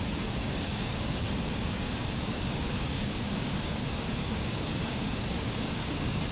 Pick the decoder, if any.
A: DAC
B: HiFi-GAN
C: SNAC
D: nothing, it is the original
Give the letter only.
A